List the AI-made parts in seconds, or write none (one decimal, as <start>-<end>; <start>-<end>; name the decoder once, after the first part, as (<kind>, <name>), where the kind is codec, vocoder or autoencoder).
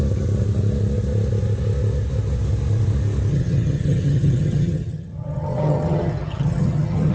3.3-7.1 (vocoder, HiFi-GAN)